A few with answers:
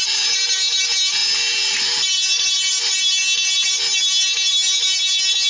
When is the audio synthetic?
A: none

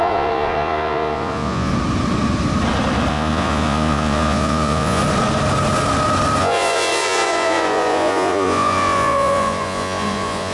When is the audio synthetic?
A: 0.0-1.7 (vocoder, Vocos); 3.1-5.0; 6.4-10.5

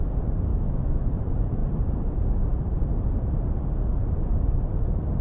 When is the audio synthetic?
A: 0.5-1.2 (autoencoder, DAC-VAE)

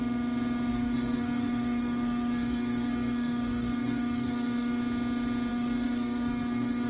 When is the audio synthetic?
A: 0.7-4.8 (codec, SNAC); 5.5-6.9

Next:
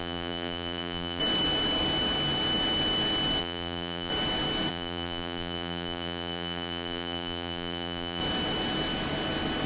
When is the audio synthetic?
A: 0.0-1.2 (vocoder, BigVGAN v2); 3.4-4.1; 4.7-8.2